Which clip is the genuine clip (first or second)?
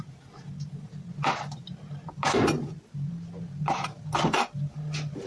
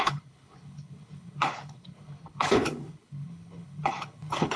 first